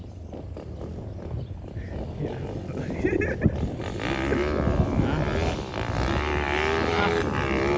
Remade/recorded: recorded